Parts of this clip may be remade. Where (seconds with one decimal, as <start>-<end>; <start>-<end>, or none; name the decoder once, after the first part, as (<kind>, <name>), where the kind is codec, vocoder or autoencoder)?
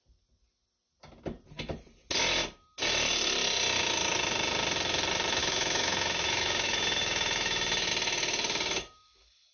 5.4-7.9 (autoencoder, DAC-VAE)